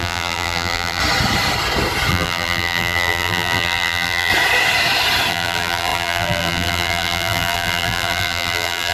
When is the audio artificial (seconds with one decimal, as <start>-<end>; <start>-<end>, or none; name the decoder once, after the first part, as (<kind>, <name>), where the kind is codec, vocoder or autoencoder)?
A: 0.0-1.0 (vocoder, BigVGAN v2); 2.1-4.3; 5.3-8.9